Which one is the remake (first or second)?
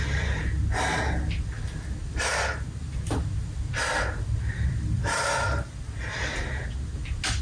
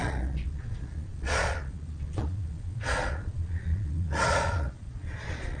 second